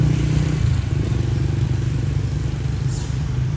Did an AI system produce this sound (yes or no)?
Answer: no